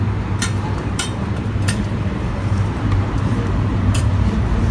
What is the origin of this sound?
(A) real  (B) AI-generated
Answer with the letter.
B